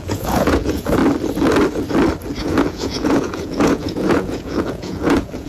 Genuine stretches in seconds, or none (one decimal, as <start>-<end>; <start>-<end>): 1.0-2.4